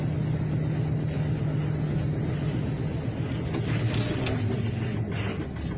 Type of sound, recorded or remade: recorded